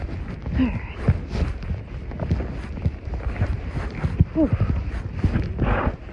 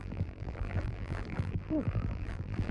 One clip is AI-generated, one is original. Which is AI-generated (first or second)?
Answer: second